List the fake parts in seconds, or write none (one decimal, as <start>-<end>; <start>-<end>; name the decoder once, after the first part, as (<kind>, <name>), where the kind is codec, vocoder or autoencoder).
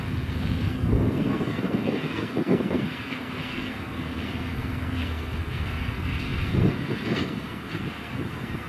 0.0-8.7 (codec, SNAC)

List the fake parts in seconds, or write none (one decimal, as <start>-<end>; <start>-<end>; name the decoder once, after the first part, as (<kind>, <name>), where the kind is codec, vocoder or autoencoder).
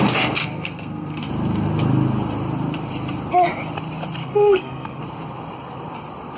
0.4-1.3 (codec, SNAC); 4.2-5.0